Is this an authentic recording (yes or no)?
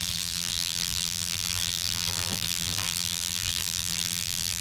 no